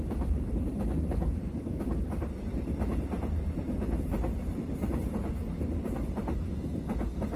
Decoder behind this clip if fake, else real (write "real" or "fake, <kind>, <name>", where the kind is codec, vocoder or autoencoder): fake, vocoder, BigVGAN v2